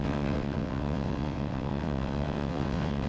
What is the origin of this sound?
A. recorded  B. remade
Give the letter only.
B